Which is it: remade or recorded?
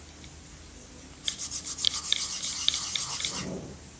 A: recorded